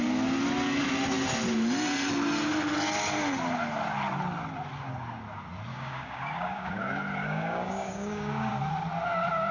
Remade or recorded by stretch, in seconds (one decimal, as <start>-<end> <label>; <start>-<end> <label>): 0.0-5.7 recorded; 5.7-6.7 remade; 6.7-7.2 recorded; 7.2-8.5 remade; 8.5-9.5 recorded